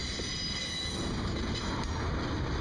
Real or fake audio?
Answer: real